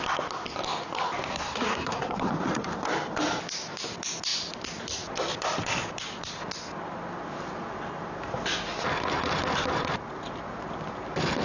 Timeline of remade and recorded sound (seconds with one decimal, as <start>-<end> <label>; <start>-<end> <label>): 0.0-1.3 recorded; 1.3-2.3 remade; 2.3-11.4 recorded